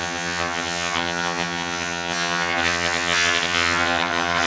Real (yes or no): no